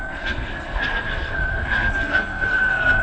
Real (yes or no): no